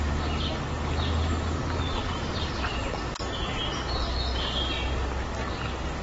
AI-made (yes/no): no